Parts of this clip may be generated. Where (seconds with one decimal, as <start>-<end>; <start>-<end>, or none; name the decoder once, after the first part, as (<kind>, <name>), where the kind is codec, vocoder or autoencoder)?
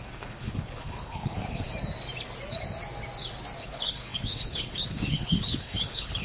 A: 0.0-1.7 (codec, HILCodec); 3.6-6.2